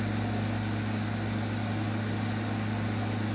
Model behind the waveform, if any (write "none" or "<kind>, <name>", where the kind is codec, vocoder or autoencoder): none